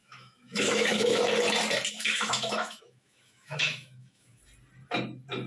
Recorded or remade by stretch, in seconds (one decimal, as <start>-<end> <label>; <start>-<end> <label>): 0.0-1.2 remade; 1.2-1.9 recorded; 1.9-4.4 remade; 4.4-5.5 recorded